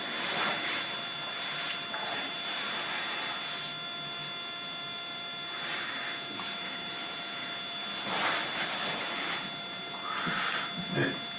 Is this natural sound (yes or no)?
yes